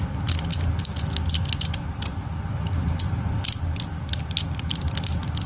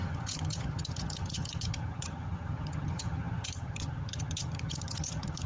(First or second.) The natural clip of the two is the first